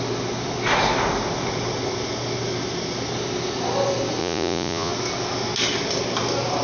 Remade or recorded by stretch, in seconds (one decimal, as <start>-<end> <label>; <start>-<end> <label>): 0.0-4.2 recorded; 4.2-4.9 remade; 4.9-6.6 recorded